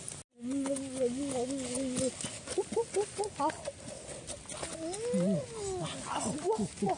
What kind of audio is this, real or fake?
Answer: real